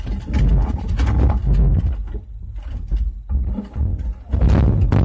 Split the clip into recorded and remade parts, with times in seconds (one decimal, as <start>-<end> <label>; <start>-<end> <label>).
0.0-5.0 recorded